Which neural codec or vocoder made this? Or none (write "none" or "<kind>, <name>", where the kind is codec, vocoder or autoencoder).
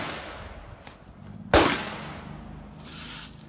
none